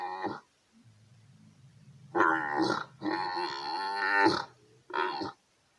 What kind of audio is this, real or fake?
real